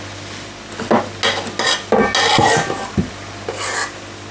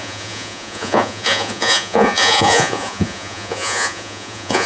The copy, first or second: second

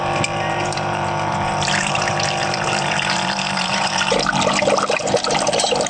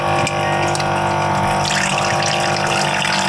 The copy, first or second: first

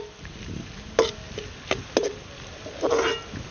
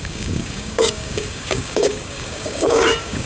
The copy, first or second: second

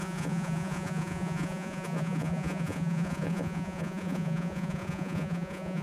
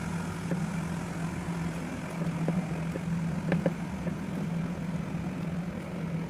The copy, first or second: first